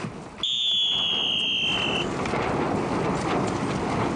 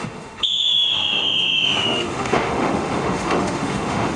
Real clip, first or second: first